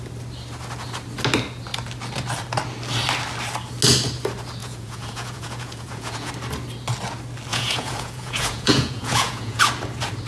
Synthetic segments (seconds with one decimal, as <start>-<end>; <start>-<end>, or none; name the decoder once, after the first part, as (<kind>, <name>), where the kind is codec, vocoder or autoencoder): 4.6-6.3 (vocoder, Vocos); 7.5-9.6